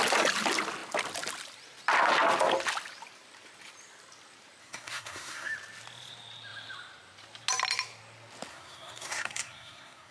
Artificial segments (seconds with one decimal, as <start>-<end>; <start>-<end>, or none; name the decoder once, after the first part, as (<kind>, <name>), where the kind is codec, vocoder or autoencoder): 4.6-5.5 (codec, SNAC); 8.5-10.1